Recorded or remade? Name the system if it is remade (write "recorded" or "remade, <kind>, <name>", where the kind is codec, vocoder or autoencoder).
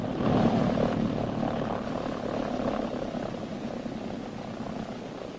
recorded